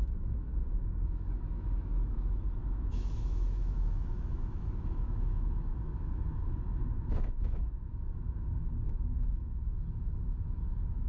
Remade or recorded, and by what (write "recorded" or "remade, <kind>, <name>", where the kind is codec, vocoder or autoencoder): remade, autoencoder, DAC-VAE